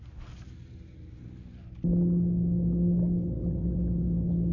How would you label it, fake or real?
real